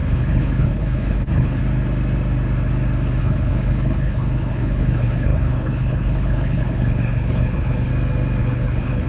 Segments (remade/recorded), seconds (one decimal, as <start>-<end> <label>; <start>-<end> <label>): 0.0-1.6 remade; 1.6-3.2 recorded; 3.2-7.9 remade; 7.9-8.4 recorded; 8.4-9.1 remade